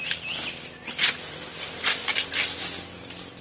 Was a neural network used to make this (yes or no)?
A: no